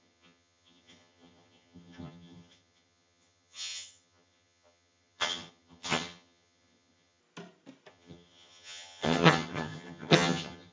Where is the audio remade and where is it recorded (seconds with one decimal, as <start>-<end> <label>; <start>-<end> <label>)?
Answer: 0.0-7.2 remade; 7.2-7.9 recorded; 7.9-10.7 remade